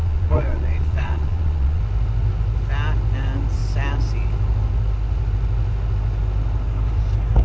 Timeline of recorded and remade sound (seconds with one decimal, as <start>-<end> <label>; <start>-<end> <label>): 0.0-1.8 remade; 1.8-7.4 recorded